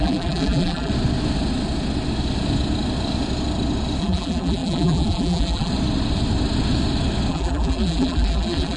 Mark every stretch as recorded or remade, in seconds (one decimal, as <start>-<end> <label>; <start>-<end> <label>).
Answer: 0.0-0.9 remade; 0.9-4.0 recorded; 4.0-5.7 remade; 5.7-7.3 recorded; 7.3-8.8 remade